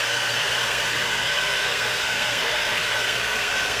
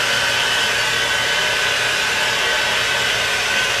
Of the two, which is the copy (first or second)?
first